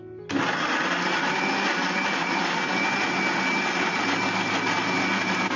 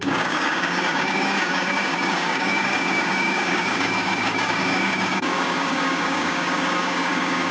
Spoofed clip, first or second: second